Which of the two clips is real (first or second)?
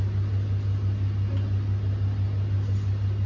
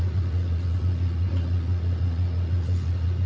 first